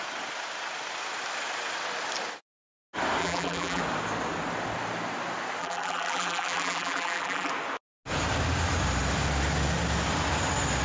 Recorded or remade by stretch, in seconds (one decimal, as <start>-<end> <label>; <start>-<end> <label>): 0.0-3.2 recorded; 3.2-3.8 remade; 3.8-5.6 recorded; 5.6-7.5 remade; 7.5-10.8 recorded